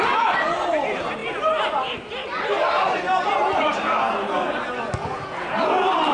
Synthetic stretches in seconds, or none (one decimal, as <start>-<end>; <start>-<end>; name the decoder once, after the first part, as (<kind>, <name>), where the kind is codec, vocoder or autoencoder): none